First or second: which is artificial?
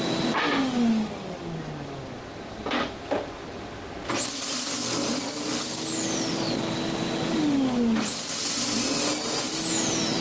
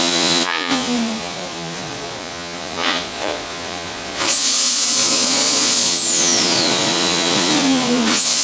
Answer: second